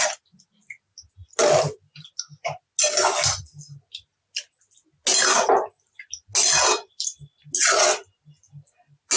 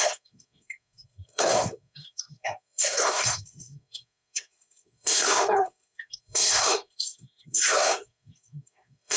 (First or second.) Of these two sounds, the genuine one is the first